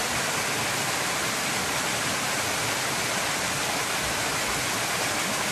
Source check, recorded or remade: recorded